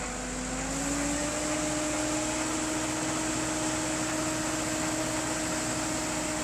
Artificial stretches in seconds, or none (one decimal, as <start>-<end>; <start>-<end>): none